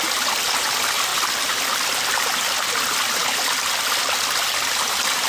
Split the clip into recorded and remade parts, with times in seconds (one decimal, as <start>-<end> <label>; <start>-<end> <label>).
0.0-5.3 recorded